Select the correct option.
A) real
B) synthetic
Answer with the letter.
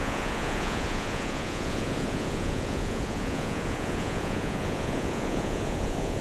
B